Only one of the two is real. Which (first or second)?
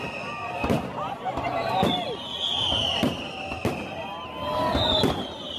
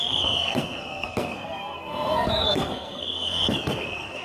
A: first